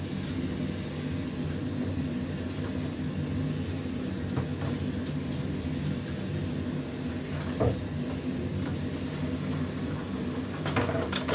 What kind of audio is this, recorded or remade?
recorded